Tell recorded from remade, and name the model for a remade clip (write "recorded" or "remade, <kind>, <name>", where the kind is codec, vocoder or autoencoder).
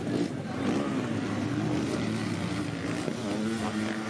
recorded